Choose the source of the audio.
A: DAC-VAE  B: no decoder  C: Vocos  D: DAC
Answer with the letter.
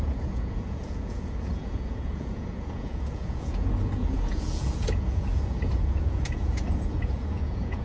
C